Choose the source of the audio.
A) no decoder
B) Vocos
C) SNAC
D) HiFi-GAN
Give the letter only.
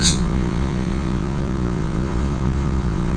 B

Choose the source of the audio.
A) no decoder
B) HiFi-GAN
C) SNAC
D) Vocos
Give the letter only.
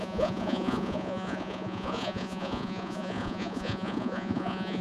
D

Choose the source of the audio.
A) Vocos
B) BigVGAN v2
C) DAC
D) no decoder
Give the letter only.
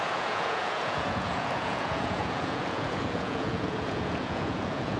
A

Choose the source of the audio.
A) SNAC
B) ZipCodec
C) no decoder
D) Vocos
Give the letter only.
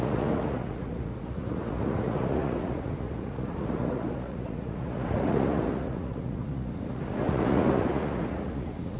D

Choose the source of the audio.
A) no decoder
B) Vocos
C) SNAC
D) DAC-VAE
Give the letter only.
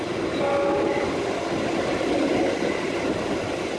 A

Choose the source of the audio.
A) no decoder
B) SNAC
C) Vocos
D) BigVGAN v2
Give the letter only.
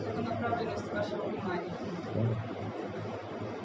A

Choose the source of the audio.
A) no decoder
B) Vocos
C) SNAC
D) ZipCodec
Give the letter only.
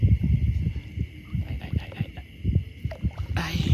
A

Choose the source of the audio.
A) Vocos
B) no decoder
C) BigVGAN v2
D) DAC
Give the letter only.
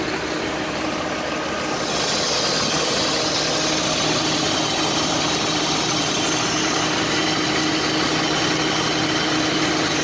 B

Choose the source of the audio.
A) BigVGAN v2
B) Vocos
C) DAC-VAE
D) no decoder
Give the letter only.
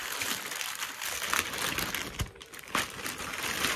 D